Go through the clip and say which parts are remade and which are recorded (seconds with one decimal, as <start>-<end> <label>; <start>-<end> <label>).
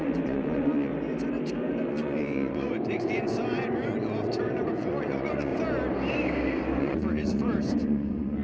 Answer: 0.0-0.9 remade; 0.9-1.9 recorded; 1.9-5.5 remade; 5.5-6.8 recorded; 6.8-8.4 remade